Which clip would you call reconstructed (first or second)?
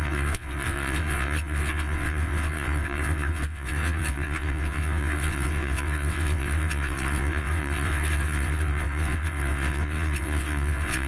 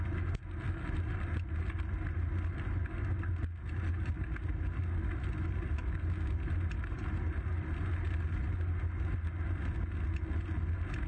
first